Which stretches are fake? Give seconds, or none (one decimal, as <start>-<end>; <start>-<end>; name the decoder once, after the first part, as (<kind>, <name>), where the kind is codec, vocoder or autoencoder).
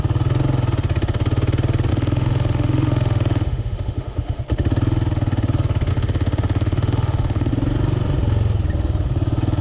1.9-4.4 (autoencoder, DAC-VAE); 5.9-7.5